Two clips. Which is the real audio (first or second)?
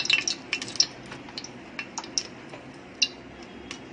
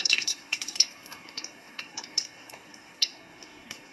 first